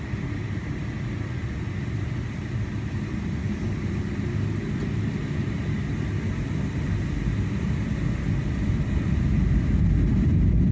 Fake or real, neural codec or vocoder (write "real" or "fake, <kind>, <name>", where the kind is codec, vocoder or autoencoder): real